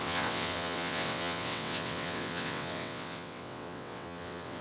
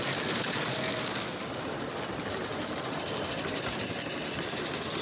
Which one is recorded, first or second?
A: second